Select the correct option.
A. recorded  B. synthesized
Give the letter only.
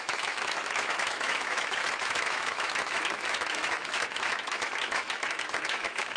B